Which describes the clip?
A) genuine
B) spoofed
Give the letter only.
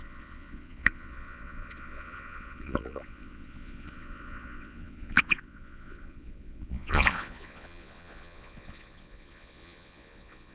B